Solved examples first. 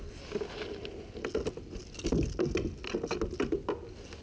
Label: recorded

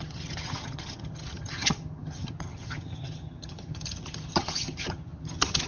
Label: remade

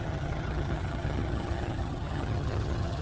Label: remade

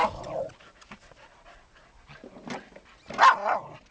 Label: recorded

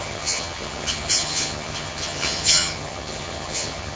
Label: remade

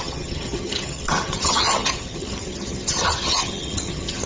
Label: remade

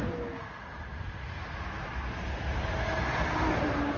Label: recorded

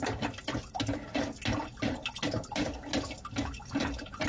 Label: recorded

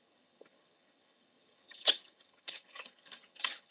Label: remade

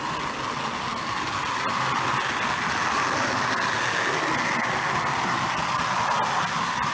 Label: recorded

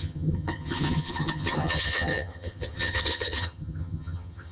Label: remade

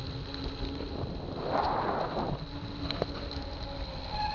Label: recorded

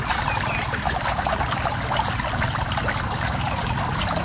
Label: recorded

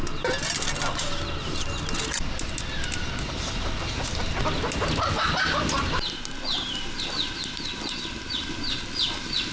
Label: recorded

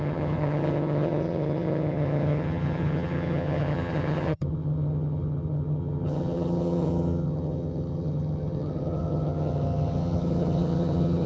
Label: remade